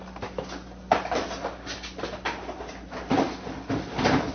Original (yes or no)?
yes